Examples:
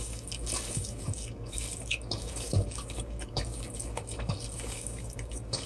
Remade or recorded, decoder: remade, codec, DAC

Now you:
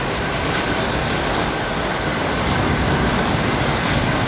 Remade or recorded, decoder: remade, codec, DAC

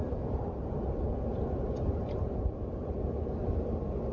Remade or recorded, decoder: recorded